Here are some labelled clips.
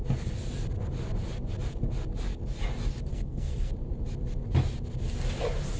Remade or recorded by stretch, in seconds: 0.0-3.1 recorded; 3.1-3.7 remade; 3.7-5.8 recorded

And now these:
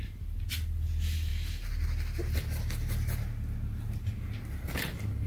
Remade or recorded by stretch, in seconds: 0.0-5.3 recorded

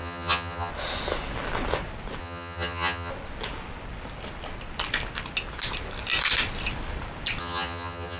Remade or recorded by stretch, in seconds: 0.0-0.7 remade; 0.7-2.2 recorded; 2.2-3.1 remade; 3.1-7.4 recorded; 7.4-8.2 remade

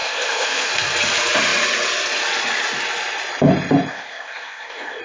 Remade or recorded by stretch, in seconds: 0.0-0.7 remade; 0.7-3.9 recorded; 3.9-5.0 remade

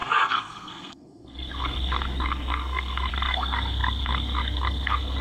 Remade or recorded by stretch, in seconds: 0.0-5.2 remade

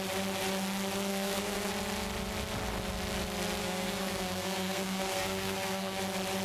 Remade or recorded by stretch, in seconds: 0.0-1.1 recorded; 1.1-1.7 remade; 1.7-3.6 recorded; 3.6-6.0 remade; 6.0-6.4 recorded

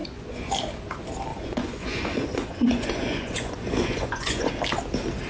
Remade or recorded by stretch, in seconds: 0.0-0.5 remade; 0.5-1.3 recorded; 1.3-4.5 remade; 4.5-5.3 recorded